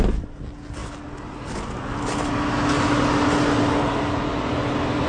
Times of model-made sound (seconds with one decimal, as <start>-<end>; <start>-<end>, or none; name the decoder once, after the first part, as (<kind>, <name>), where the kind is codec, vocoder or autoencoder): none